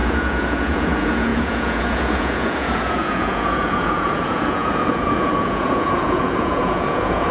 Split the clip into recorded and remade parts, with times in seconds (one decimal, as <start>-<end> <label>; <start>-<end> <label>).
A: 0.0-7.3 remade